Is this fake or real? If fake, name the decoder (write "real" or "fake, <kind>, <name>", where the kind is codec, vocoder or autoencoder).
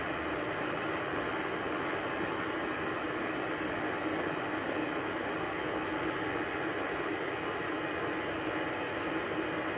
real